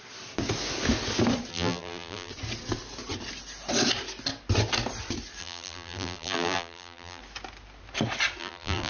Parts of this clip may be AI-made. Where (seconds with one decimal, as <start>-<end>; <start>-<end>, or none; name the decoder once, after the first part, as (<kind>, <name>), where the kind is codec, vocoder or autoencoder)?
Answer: 1.5-2.3 (vocoder, BigVGAN v2); 5.4-7.2; 8.4-8.9